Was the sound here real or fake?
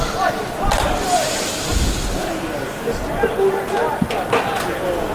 real